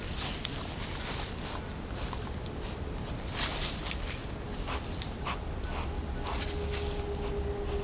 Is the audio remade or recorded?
recorded